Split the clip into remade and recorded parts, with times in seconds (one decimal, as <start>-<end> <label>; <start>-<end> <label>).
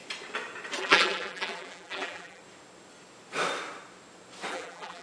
0.0-0.8 recorded; 0.8-2.4 remade; 2.4-4.5 recorded; 4.5-5.0 remade